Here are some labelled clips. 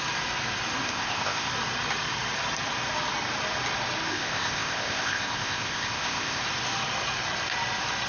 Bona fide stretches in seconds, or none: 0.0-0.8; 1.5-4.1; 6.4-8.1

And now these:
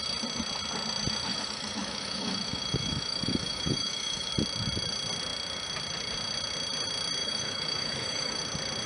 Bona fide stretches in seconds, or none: 0.0-1.3; 4.3-7.2; 8.4-8.9